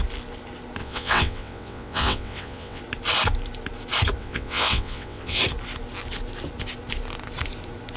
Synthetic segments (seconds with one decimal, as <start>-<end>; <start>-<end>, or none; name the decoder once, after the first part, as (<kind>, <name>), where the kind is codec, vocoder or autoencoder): 0.8-2.8 (vocoder, WaveNeXt); 4.2-5.4